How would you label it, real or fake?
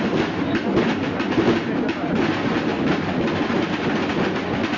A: real